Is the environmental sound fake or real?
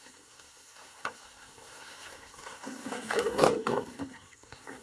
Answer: fake